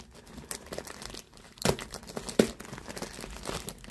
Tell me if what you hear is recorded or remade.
recorded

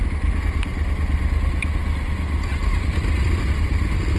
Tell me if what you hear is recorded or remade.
recorded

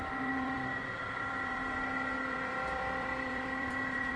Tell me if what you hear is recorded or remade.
remade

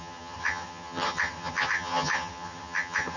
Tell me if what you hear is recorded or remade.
remade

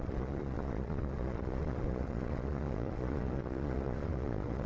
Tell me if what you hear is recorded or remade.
remade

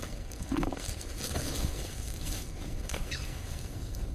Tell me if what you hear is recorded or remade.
remade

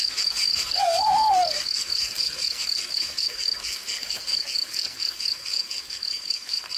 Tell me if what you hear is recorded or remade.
remade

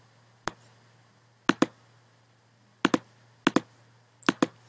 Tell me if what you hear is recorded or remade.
recorded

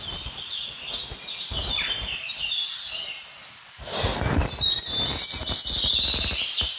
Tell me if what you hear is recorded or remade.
recorded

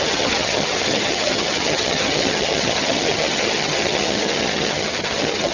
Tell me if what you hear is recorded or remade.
remade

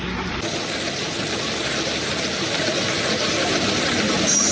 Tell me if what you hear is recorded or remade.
recorded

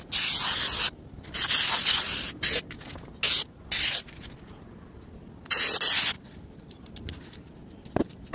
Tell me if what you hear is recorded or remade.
recorded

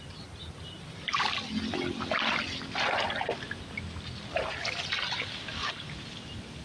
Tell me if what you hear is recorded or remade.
recorded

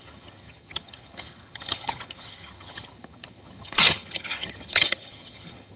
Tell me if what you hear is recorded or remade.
remade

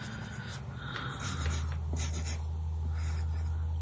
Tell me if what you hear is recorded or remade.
recorded